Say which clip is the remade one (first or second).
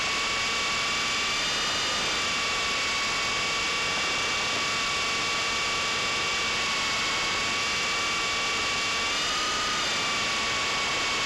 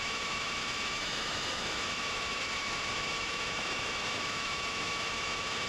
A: second